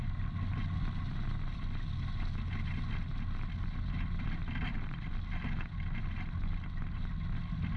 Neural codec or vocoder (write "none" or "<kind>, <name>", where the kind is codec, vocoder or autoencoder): none